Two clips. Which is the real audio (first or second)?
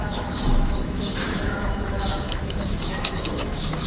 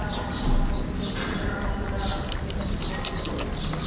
second